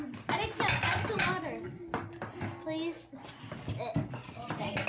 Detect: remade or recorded recorded